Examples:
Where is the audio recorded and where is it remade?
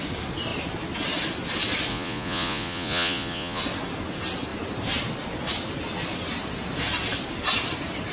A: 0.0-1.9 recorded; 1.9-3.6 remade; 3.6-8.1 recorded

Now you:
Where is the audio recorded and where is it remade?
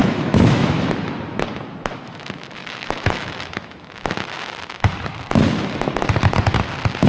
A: 0.0-0.9 remade; 0.9-2.6 recorded; 2.6-4.0 remade; 4.0-7.1 recorded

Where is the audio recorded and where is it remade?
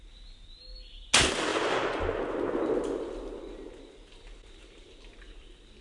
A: 0.0-5.8 recorded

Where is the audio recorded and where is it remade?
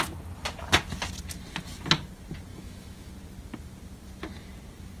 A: 0.0-2.5 recorded; 2.5-3.1 remade; 3.1-5.0 recorded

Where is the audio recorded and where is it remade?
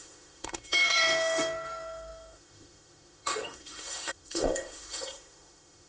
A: 0.0-5.9 remade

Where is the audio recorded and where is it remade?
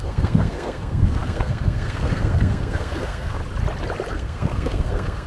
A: 0.0-3.4 remade; 3.4-4.1 recorded; 4.1-5.3 remade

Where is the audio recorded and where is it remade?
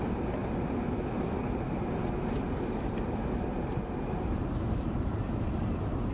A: 0.0-6.1 recorded